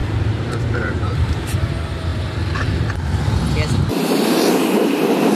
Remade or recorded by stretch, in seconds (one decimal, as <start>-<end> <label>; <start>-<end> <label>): 0.0-1.3 remade; 1.3-3.9 recorded; 3.9-4.4 remade; 4.4-5.4 recorded